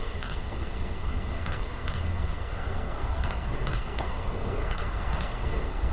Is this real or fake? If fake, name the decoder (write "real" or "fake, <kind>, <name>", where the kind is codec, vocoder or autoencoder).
fake, codec, SNAC